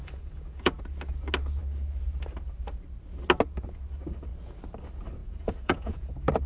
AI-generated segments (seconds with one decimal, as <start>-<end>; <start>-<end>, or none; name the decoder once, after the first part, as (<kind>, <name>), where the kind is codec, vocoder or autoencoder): 0.0-0.8 (vocoder, Vocos); 5.2-6.1